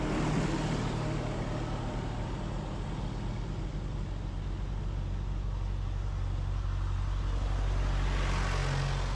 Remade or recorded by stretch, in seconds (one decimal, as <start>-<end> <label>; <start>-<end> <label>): 0.0-9.2 recorded